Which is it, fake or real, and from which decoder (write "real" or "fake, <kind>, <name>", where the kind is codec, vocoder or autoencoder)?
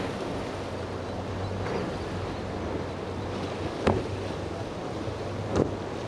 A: real